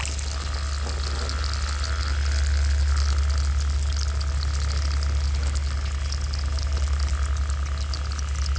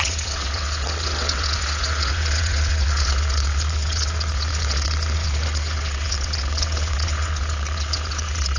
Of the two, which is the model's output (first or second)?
second